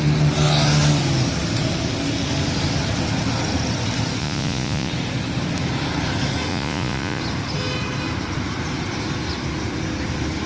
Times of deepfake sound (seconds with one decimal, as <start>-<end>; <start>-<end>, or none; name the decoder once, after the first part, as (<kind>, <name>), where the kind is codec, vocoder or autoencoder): 4.2-4.9 (vocoder, Vocos); 6.5-7.2